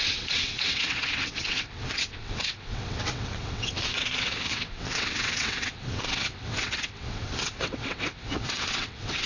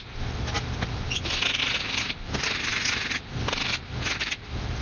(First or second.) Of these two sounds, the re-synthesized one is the first